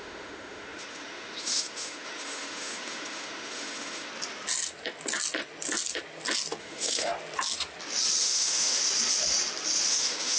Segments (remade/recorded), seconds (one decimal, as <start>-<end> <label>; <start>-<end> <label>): 0.0-4.1 remade; 4.1-6.6 recorded; 6.6-7.1 remade; 7.1-8.2 recorded; 8.2-8.8 remade; 8.8-9.9 recorded; 9.9-10.4 remade